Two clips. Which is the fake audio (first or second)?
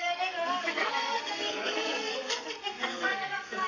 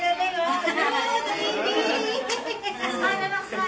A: first